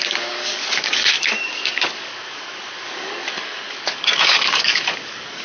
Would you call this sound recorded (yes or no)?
no